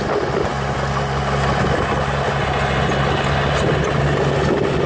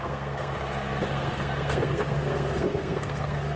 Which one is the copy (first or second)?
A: second